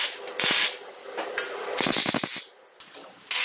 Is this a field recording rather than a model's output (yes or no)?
yes